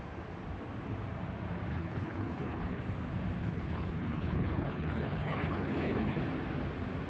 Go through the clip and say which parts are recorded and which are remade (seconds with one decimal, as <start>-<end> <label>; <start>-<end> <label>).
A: 0.0-1.7 recorded; 1.7-2.8 remade; 2.8-3.4 recorded; 3.4-6.2 remade; 6.2-7.1 recorded

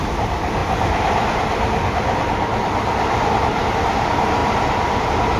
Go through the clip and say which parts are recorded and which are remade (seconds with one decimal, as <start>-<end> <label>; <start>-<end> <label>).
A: 0.0-5.4 recorded

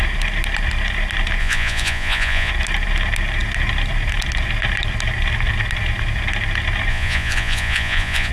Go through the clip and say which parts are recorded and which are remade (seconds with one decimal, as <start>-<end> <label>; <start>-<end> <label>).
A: 0.0-1.4 recorded; 1.4-2.5 remade; 2.5-6.9 recorded; 6.9-8.3 remade

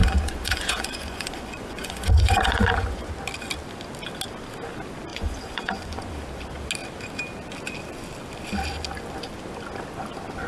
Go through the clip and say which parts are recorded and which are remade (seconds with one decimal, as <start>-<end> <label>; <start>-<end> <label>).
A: 0.0-3.1 remade; 3.1-5.1 recorded; 5.1-6.1 remade; 6.1-10.5 recorded

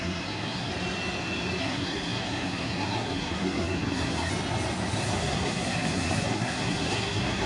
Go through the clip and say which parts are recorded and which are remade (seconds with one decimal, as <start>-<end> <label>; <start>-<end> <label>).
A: 0.0-0.7 remade; 0.7-1.6 recorded; 1.6-4.3 remade; 4.3-5.0 recorded; 5.0-7.5 remade

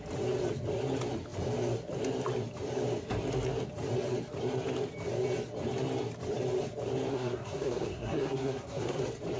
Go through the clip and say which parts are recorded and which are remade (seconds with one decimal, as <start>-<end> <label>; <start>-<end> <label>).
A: 0.0-7.1 recorded; 7.1-9.0 remade; 9.0-9.4 recorded

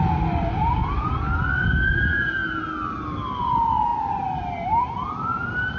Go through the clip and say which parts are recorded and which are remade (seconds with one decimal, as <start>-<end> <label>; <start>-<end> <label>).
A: 0.0-0.8 remade; 0.8-1.9 recorded; 1.9-2.4 remade; 2.4-3.4 recorded; 3.4-5.8 remade

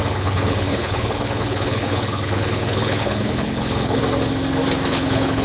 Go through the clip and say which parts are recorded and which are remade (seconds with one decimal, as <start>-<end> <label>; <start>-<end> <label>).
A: 0.0-4.0 remade; 4.0-4.9 recorded; 4.9-5.4 remade